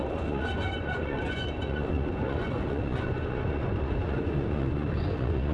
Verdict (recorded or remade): remade